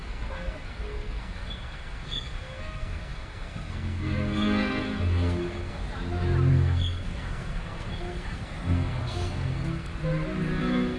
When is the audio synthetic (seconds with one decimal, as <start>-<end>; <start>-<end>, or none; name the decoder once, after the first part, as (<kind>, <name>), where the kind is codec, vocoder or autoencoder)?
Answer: 0.0-5.8 (codec, SNAC); 6.5-9.9; 10.6-11.0

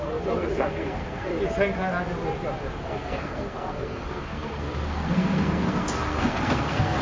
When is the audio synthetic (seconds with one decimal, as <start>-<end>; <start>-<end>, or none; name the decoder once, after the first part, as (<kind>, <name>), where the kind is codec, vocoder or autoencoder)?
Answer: 0.0-1.3 (codec, SNAC); 2.8-7.0